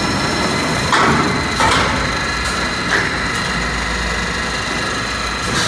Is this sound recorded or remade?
recorded